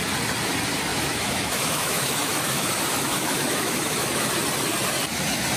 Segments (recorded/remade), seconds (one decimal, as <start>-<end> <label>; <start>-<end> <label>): 0.0-0.9 recorded; 0.9-4.3 remade; 4.3-5.6 recorded